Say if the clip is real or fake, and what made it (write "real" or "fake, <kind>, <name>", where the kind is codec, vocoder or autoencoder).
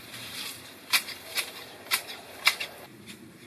fake, vocoder, BigVGAN v2